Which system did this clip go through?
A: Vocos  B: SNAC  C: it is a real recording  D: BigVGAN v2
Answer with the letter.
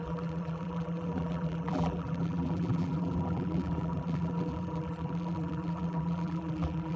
D